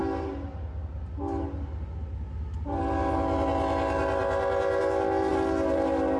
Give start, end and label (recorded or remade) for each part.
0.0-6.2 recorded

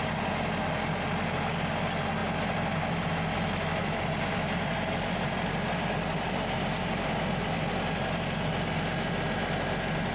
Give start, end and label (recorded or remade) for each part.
0.0-2.2 recorded; 2.2-3.1 remade; 3.1-3.8 recorded; 3.8-7.7 remade; 7.7-10.1 recorded

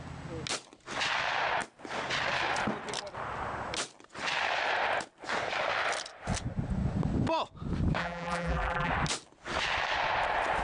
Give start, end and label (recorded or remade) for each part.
0.0-8.0 recorded; 8.0-8.9 remade; 8.9-10.6 recorded

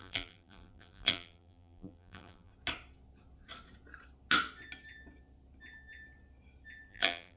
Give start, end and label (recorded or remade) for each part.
0.0-2.5 remade; 2.5-6.9 recorded; 6.9-7.4 remade

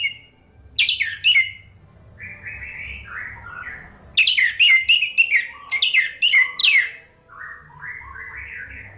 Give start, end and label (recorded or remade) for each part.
0.0-6.6 recorded; 6.6-7.3 remade; 7.3-9.0 recorded

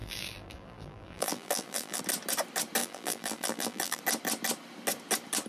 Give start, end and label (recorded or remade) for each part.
0.0-2.0 remade; 2.0-2.8 recorded; 2.8-4.0 remade; 4.0-5.5 recorded